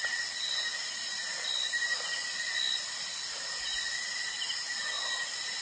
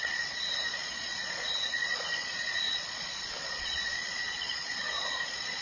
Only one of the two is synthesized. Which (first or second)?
second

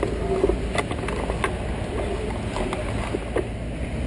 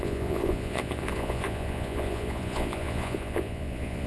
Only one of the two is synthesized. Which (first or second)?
second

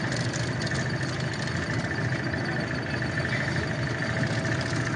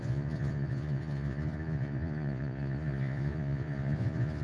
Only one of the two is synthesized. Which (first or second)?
second